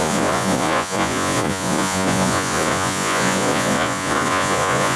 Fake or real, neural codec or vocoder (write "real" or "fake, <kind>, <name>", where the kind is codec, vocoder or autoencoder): fake, vocoder, Vocos